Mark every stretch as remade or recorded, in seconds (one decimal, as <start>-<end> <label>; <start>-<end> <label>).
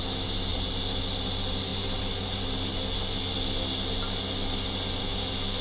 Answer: 0.0-5.6 recorded